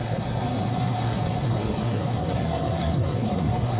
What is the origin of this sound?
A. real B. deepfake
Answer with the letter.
B